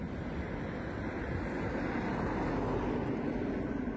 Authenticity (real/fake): real